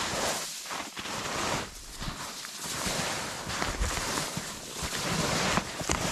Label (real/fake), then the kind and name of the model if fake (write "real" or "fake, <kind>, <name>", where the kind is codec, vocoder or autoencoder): real